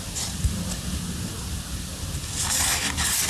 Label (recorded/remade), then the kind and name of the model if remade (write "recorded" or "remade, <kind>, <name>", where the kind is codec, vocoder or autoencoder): recorded